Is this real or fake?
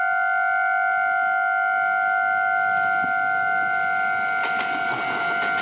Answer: real